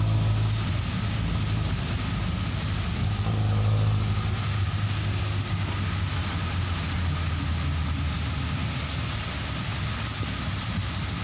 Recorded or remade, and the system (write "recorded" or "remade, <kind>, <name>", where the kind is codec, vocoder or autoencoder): recorded